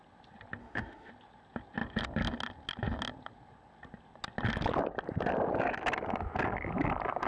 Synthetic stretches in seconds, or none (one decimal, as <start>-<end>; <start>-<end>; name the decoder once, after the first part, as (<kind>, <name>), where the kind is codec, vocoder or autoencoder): 0.6-1.1 (autoencoder, DAC-VAE)